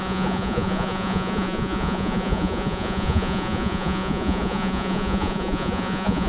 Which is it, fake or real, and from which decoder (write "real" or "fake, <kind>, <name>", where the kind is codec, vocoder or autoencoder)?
fake, vocoder, Vocos